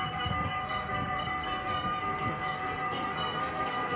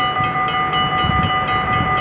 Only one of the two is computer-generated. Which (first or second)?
first